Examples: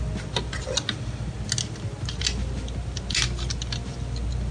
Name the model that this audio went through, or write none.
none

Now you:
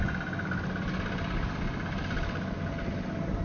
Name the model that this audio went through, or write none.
none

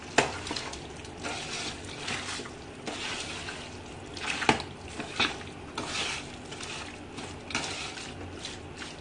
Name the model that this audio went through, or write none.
none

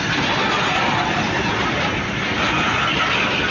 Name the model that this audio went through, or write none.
none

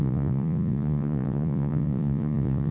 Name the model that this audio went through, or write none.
vocoder, Vocos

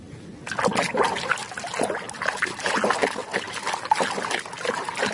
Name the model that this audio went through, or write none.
none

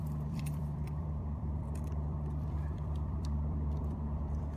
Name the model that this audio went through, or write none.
vocoder, BigVGAN v2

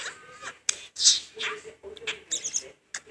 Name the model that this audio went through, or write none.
none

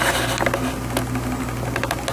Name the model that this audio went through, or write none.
none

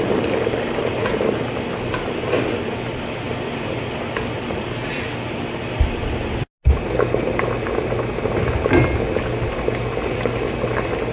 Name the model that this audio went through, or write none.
none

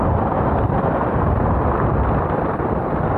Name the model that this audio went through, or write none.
none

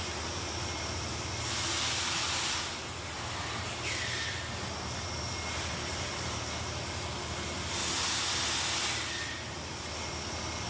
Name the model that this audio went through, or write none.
none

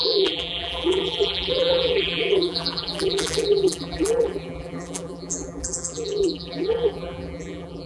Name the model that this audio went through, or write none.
vocoder, BigVGAN v2